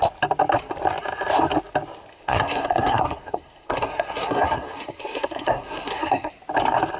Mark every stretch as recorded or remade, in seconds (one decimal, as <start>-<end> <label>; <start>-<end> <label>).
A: 0.0-2.1 recorded; 2.1-6.3 remade; 6.3-7.0 recorded